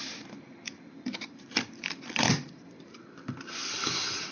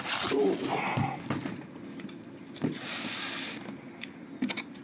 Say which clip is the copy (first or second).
first